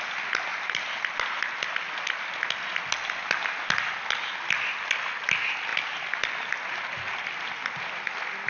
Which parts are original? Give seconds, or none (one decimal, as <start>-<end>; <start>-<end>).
0.0-0.5; 1.5-8.5